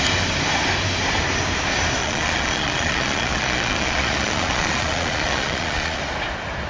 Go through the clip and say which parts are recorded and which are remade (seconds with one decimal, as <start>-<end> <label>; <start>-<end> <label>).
0.0-2.0 recorded; 2.0-6.0 remade; 6.0-6.7 recorded